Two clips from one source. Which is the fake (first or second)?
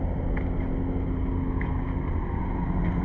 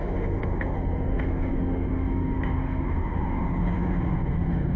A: second